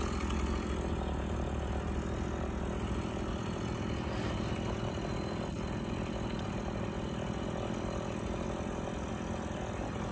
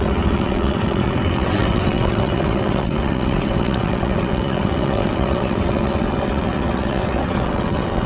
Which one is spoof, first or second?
second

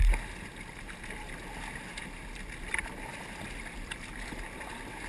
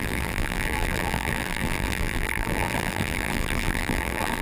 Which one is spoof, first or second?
second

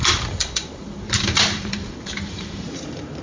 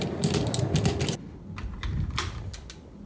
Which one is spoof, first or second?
first